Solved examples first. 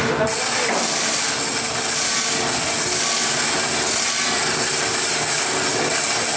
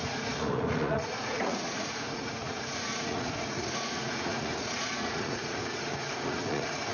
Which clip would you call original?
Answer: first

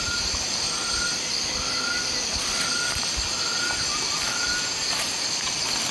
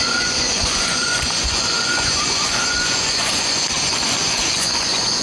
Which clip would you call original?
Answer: first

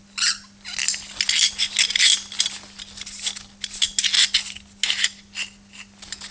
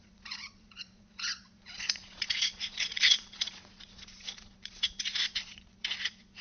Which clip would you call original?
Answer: first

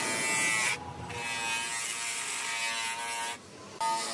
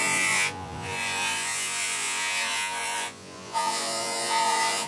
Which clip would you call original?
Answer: first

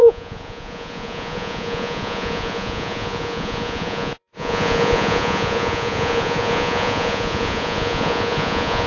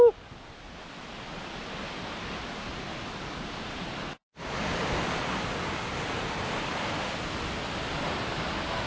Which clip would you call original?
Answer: second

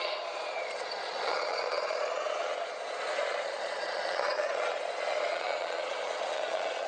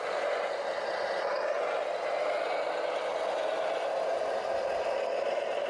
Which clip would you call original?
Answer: second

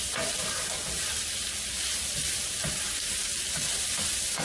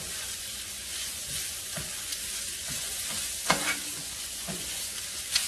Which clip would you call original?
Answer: first